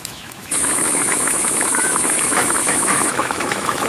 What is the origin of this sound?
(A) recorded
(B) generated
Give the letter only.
B